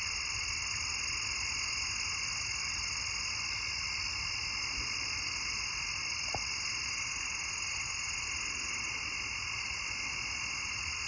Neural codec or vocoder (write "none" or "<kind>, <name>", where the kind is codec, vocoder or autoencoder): none